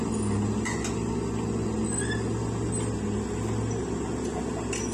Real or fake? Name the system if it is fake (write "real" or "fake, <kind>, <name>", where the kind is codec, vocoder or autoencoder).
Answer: real